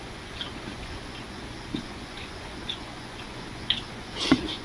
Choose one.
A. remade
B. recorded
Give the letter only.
A